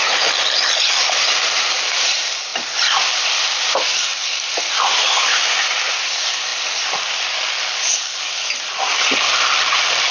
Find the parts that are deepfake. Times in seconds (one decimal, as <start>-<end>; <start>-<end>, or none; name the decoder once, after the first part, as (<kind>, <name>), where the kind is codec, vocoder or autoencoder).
none